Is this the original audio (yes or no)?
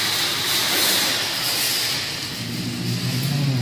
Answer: yes